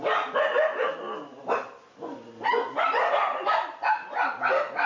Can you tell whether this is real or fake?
real